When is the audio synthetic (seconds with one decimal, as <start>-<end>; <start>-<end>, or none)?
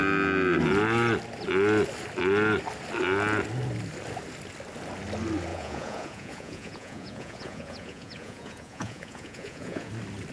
5.5-9.9